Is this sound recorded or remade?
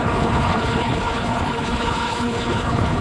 remade